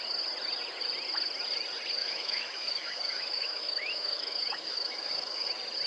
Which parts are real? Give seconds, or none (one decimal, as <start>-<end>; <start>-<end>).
0.0-2.0; 5.5-5.9